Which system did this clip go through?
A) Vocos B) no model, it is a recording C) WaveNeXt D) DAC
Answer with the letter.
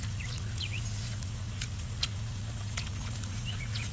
A